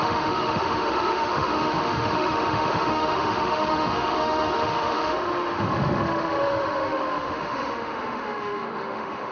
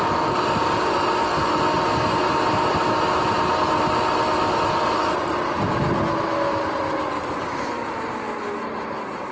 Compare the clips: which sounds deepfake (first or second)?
first